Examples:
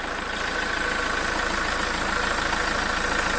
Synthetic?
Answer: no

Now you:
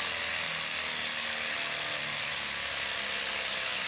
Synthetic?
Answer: no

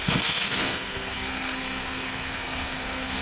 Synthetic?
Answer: yes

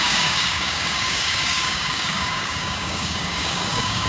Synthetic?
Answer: yes